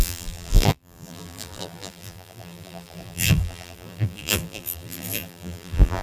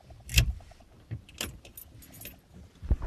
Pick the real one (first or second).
second